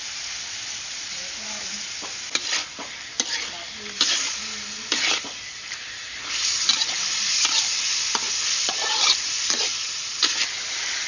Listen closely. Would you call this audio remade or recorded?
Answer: recorded